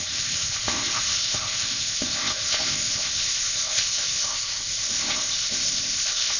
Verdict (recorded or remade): remade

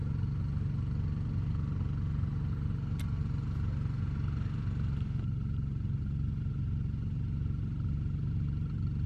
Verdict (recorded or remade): recorded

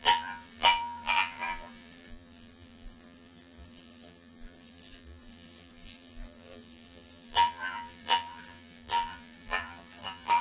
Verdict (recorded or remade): remade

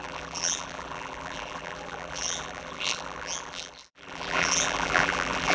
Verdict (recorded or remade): remade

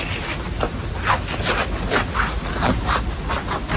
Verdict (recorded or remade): recorded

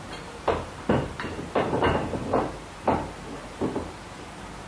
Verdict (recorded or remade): remade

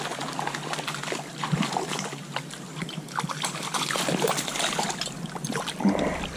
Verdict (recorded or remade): recorded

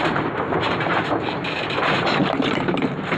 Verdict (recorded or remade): remade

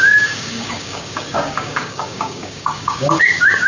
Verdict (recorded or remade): remade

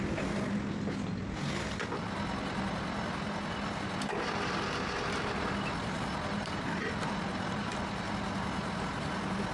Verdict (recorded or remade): recorded